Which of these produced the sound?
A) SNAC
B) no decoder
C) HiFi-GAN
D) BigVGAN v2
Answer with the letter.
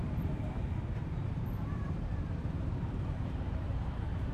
D